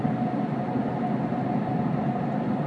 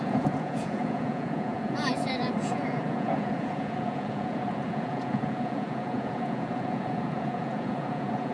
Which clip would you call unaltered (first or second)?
first